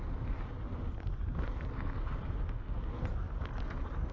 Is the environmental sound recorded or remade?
recorded